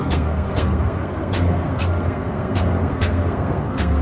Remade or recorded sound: remade